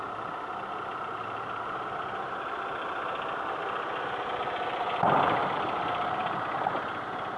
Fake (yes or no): no